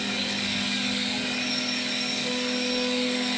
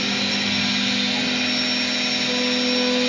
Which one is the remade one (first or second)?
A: first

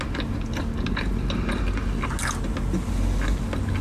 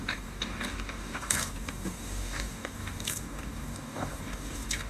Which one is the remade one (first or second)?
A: second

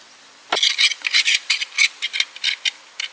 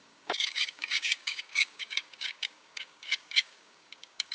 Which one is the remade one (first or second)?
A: second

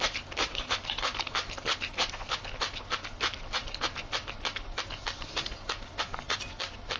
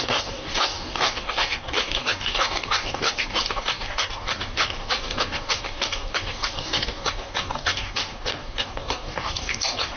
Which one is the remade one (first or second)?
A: second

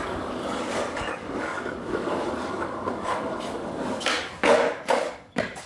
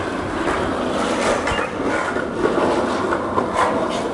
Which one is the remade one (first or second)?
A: first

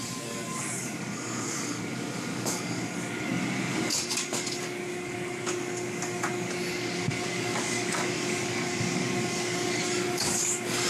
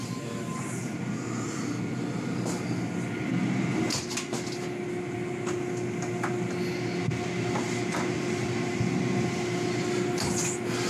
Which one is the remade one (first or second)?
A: first